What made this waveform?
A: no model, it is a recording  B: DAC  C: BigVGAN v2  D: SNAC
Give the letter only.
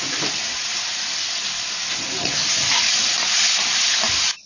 A